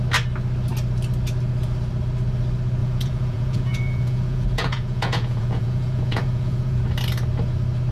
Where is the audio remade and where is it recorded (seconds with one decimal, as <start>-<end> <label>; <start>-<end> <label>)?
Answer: 0.0-2.8 recorded; 2.8-6.8 remade; 6.8-7.9 recorded